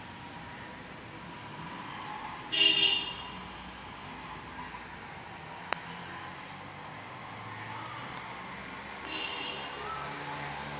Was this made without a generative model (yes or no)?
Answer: yes